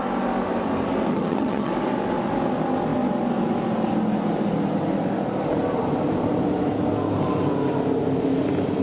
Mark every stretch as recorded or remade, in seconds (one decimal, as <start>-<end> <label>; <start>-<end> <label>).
0.0-1.1 recorded; 1.1-1.7 remade; 1.7-8.8 recorded